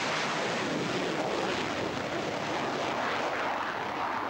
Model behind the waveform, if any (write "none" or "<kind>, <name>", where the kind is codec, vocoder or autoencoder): none